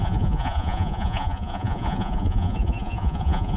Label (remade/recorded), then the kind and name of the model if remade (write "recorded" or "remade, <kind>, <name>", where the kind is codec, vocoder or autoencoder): remade, vocoder, Vocos